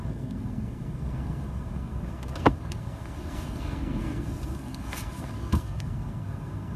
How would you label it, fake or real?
fake